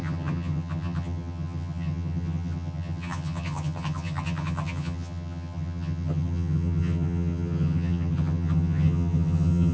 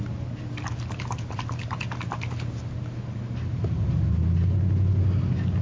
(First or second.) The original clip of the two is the second